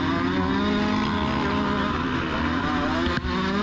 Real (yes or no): yes